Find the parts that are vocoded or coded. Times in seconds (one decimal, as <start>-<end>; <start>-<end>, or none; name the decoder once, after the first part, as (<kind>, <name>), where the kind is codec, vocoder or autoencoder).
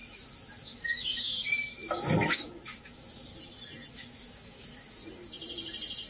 0.0-3.3 (autoencoder, DAC-VAE); 3.9-5.0